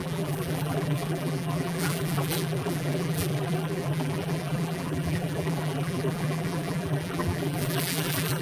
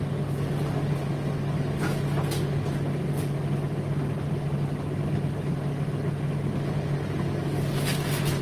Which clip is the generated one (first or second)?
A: first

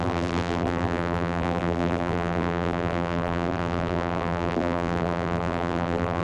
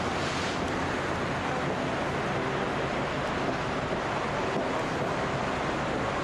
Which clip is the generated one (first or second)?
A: first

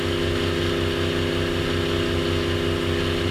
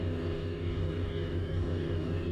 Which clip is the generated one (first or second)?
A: second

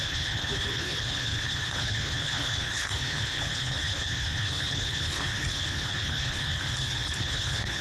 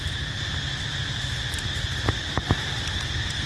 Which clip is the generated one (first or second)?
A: first